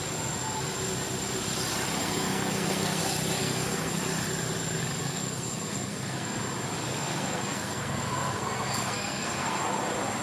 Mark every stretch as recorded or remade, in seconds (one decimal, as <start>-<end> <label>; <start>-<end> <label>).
0.0-2.0 recorded; 2.0-3.0 remade; 3.0-3.4 recorded; 3.4-4.0 remade; 4.0-5.0 recorded; 5.0-6.4 remade; 6.4-6.9 recorded; 6.9-9.6 remade; 9.6-10.2 recorded